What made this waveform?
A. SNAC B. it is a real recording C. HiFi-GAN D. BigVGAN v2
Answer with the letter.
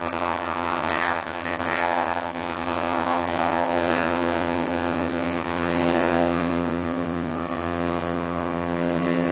C